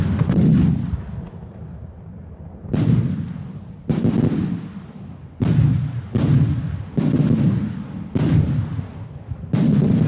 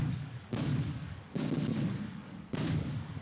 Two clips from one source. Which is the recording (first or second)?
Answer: first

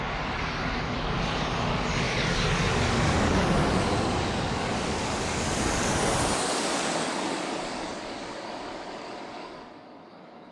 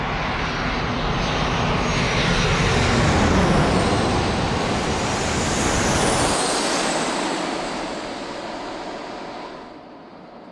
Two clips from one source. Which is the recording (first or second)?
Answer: second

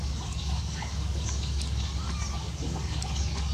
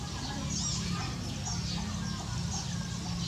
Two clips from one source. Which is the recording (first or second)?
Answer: second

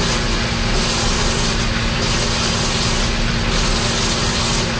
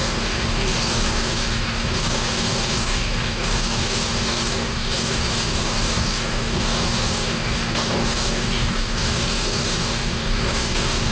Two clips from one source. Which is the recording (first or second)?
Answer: first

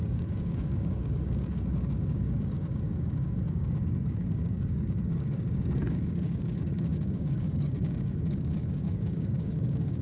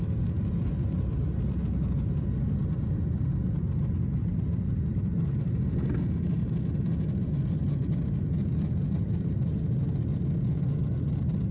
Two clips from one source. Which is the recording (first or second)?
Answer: second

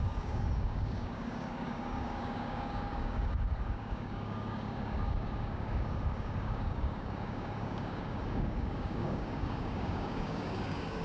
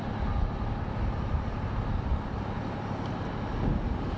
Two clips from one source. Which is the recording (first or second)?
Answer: second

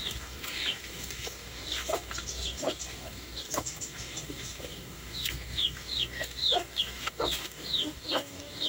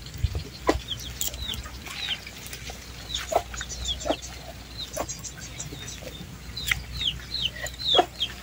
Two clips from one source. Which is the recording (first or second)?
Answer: second